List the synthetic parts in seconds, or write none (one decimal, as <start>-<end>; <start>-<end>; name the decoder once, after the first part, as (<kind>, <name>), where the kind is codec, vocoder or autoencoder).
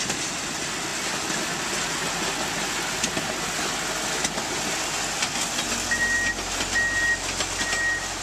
none